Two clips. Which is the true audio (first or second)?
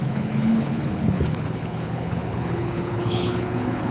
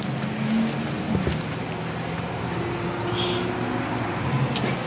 second